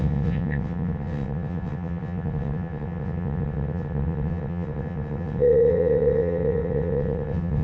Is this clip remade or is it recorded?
remade